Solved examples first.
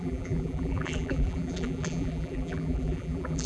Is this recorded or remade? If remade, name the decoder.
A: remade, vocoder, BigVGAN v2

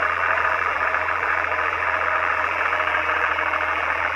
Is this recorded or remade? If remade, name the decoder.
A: remade, vocoder, BigVGAN v2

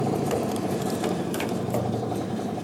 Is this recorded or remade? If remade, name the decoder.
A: remade, vocoder, BigVGAN v2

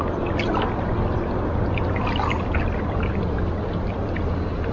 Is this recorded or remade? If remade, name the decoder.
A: recorded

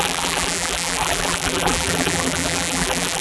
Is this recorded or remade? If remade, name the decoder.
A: remade, vocoder, BigVGAN v2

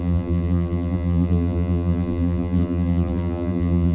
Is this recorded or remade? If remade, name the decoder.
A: remade, vocoder, BigVGAN v2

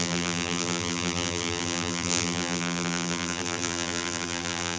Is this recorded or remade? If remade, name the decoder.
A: remade, vocoder, BigVGAN v2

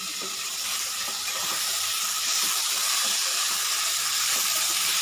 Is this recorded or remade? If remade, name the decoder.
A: remade, vocoder, BigVGAN v2